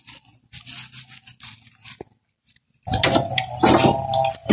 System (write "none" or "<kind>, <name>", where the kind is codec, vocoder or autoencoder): none